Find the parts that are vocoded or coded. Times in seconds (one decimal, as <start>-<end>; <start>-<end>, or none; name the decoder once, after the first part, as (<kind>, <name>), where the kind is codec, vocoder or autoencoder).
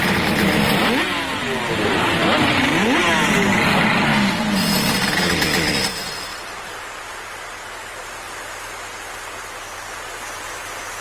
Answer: none